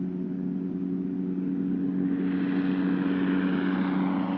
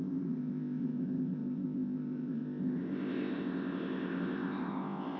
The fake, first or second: second